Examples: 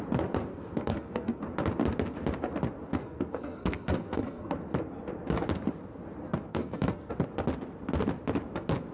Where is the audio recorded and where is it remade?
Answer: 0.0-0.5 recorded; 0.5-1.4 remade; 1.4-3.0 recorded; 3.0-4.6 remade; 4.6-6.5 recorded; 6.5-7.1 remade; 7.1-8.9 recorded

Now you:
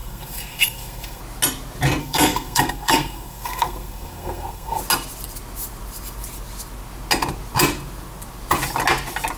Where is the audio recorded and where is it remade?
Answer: 0.0-1.2 remade; 1.2-2.0 recorded; 2.0-4.8 remade; 4.8-9.4 recorded

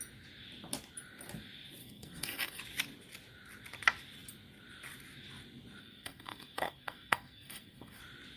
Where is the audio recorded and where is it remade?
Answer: 0.0-1.8 recorded; 1.8-2.6 remade; 2.6-5.8 recorded; 5.8-8.0 remade; 8.0-8.4 recorded

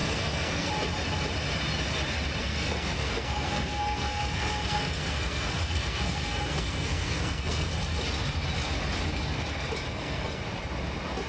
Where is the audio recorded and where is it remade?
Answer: 0.0-0.7 remade; 0.7-2.4 recorded; 2.4-7.7 remade; 7.7-9.9 recorded; 9.9-10.4 remade; 10.4-11.3 recorded

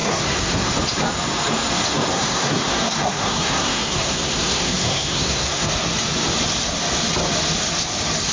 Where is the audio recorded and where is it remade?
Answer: 0.0-0.7 remade; 0.7-2.1 recorded; 2.1-5.7 remade; 5.7-8.3 recorded

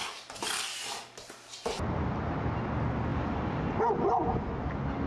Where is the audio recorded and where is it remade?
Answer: 0.0-5.1 recorded